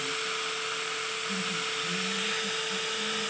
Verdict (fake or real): real